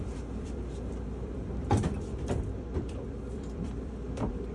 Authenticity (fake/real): fake